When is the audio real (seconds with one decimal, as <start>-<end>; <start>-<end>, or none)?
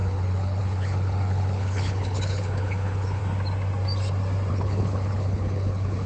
3.2-4.5